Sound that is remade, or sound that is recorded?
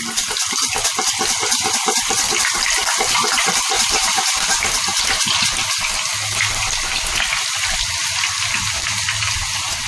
recorded